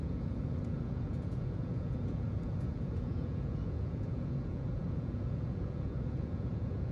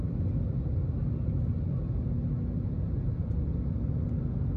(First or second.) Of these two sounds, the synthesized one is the first